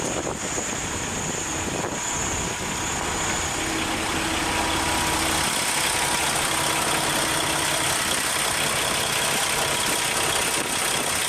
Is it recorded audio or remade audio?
recorded